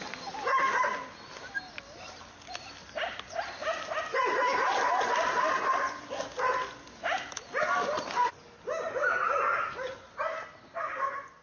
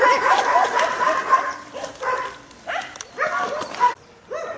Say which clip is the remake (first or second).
second